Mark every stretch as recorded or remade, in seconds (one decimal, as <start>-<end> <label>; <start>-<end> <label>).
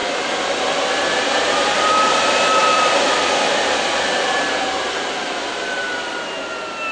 0.0-1.9 recorded; 1.9-6.9 remade